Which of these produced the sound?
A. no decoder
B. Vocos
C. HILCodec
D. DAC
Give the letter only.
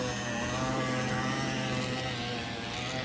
A